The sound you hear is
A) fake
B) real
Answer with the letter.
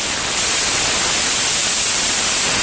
B